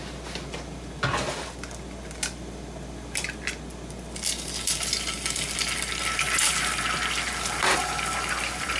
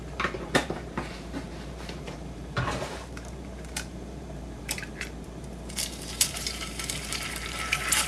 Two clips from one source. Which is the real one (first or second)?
first